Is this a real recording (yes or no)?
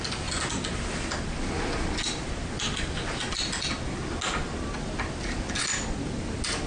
yes